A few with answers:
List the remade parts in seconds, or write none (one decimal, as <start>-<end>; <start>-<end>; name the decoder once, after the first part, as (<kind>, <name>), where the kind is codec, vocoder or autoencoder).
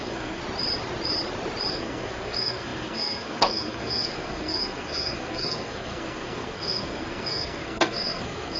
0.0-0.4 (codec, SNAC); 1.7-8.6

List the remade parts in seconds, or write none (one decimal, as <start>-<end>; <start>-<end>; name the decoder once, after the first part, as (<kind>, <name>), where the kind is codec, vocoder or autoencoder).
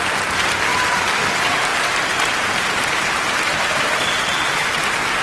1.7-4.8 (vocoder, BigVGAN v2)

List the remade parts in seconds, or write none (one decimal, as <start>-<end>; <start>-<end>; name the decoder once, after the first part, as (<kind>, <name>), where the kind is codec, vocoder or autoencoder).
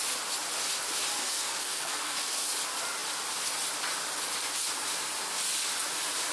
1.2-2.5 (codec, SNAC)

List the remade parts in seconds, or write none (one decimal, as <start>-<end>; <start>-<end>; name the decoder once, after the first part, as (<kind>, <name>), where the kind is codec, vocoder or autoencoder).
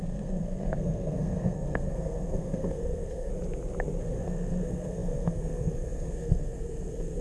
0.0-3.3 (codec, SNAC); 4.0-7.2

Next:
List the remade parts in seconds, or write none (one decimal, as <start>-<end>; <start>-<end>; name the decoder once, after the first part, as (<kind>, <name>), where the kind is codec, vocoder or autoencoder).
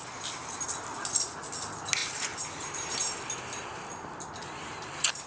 none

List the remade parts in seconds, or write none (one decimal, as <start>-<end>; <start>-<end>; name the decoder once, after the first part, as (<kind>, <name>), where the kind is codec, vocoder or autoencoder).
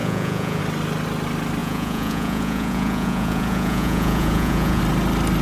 0.0-0.6 (vocoder, Vocos); 1.6-4.8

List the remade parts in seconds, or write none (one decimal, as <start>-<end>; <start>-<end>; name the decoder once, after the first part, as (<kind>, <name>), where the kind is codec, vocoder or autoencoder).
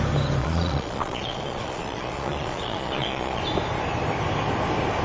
0.4-3.4 (vocoder, Vocos)